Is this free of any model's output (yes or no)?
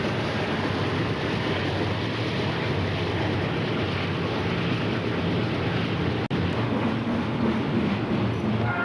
yes